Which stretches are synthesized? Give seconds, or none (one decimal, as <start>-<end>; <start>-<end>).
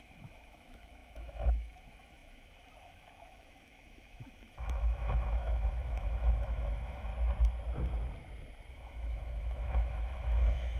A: 0.0-7.1; 8.7-10.8